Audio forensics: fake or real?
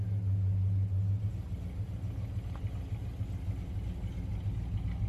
real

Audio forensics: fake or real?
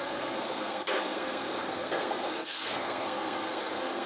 fake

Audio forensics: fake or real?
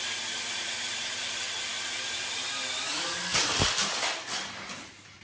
real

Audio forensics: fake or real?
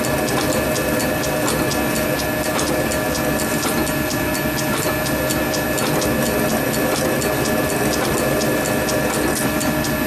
real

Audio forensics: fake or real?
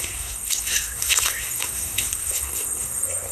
fake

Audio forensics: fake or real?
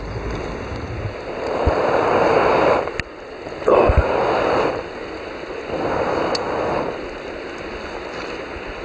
real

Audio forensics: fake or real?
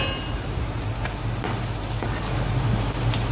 real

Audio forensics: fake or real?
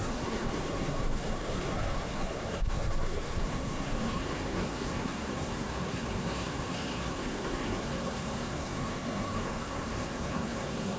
fake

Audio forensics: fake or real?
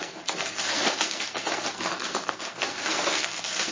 fake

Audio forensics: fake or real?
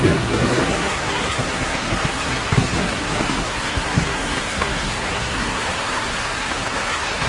fake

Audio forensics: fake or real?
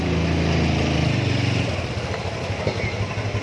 real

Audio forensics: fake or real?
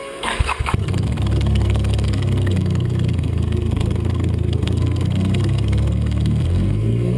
fake